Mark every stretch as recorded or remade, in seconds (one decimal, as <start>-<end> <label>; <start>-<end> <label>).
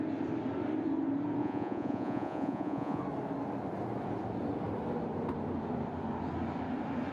0.0-1.4 recorded; 1.4-3.0 remade; 3.0-7.1 recorded